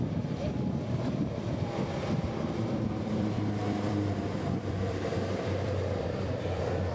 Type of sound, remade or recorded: remade